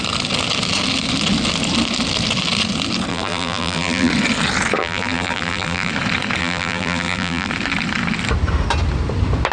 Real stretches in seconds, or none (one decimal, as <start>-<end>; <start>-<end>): 0.0-3.1; 4.1-4.8; 5.9-6.4; 7.5-9.5